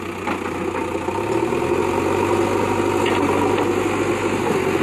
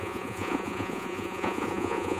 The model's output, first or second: second